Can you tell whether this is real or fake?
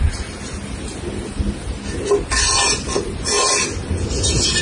real